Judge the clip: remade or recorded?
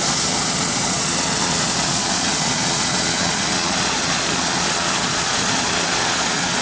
remade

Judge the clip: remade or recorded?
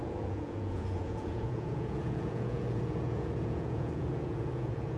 remade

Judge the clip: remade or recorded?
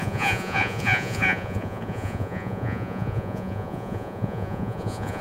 remade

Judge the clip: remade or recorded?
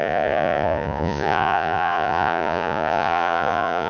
remade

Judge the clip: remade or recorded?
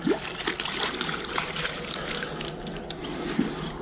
recorded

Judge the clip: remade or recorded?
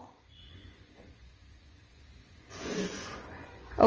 remade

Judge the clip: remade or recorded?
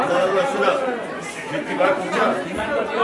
remade